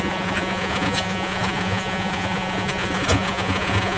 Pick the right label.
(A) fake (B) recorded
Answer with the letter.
A